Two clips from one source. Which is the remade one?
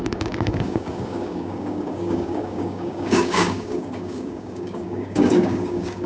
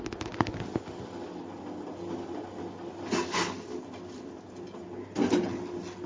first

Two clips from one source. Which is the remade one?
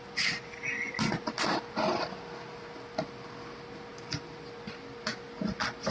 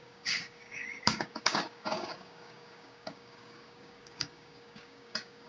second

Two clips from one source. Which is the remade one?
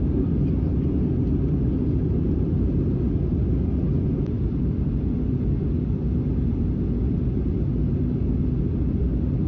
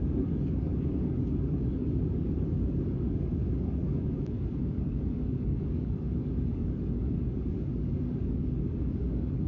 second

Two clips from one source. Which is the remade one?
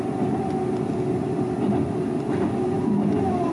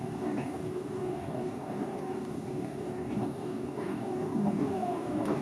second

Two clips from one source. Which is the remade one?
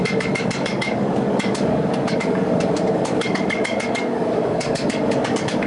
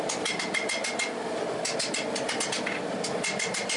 first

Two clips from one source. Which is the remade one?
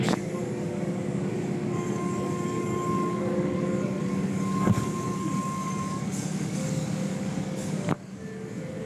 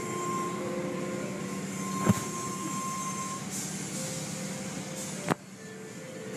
first